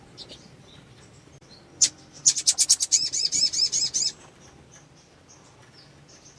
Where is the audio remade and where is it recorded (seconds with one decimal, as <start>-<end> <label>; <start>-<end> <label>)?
0.0-2.2 remade; 2.2-3.8 recorded; 3.8-6.4 remade